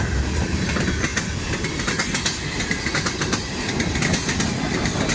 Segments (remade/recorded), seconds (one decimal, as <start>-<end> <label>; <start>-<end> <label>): 0.0-5.1 recorded